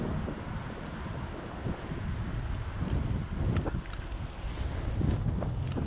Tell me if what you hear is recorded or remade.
recorded